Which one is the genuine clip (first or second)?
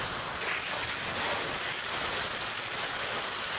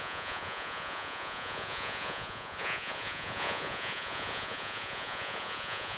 first